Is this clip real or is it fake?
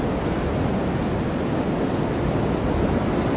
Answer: real